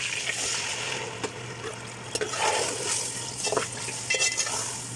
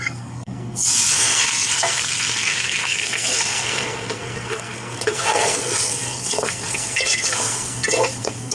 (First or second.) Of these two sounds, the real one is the first